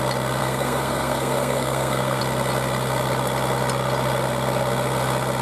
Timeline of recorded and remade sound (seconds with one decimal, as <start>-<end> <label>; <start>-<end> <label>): 0.0-0.4 recorded; 0.4-2.2 remade; 2.2-5.4 recorded